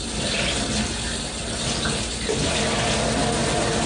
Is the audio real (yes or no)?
yes